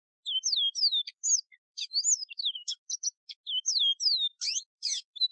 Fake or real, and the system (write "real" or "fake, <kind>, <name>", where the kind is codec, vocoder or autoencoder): fake, autoencoder, DAC-VAE